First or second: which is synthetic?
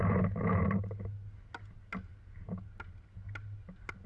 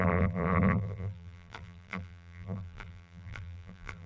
second